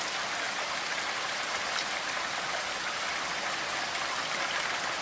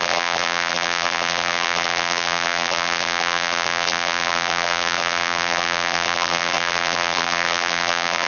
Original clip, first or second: first